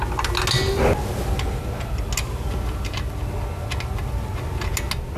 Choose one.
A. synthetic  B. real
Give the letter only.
B